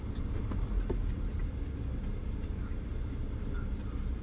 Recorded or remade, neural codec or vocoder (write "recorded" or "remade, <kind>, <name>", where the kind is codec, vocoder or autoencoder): recorded